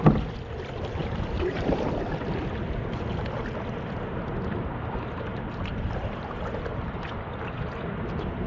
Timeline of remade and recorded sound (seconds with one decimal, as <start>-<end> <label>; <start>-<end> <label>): 0.0-1.0 recorded; 1.0-1.6 remade; 1.6-5.3 recorded; 5.3-6.6 remade; 6.6-8.5 recorded